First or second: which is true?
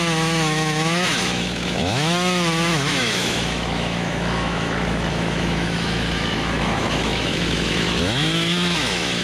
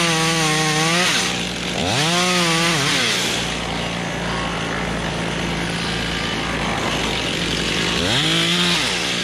second